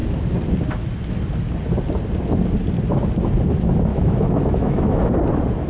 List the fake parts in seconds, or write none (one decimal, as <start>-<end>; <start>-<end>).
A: 3.9-5.1